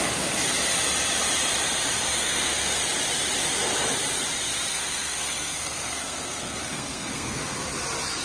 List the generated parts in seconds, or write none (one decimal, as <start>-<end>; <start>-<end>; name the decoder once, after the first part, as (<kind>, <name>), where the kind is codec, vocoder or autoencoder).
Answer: 2.1-2.8 (codec, SNAC); 4.7-7.4